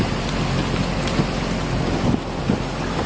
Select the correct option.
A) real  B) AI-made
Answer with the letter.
A